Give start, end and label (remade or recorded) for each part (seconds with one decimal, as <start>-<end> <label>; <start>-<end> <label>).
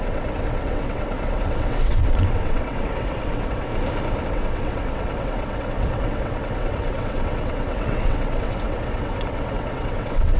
0.0-3.7 remade; 3.7-4.3 recorded; 4.3-10.4 remade